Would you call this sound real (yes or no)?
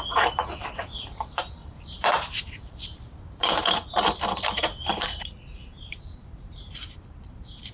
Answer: no